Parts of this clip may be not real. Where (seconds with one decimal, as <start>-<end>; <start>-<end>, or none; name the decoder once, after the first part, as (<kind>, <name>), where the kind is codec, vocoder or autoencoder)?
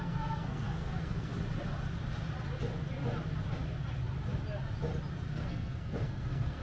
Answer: 0.0-1.3 (codec, SNAC); 5.3-6.6